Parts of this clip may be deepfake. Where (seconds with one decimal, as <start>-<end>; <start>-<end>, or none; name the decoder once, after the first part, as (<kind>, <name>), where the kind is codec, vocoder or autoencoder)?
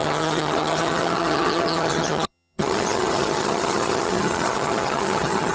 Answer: 0.0-5.5 (vocoder, HiFi-GAN)